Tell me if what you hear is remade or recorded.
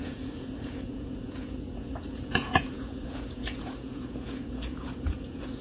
remade